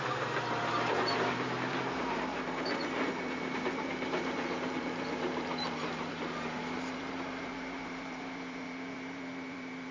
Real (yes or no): no